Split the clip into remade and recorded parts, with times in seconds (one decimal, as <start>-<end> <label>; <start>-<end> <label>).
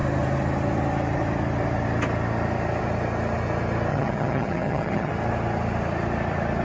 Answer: 0.0-3.9 recorded; 3.9-5.1 remade; 5.1-6.6 recorded